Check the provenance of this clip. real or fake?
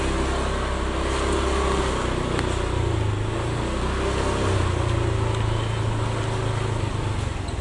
real